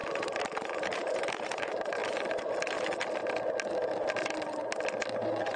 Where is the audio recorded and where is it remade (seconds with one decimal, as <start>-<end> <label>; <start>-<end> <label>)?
0.0-2.0 remade; 2.0-5.6 recorded